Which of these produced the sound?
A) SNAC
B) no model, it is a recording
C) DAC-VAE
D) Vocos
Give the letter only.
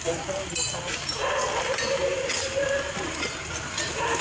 B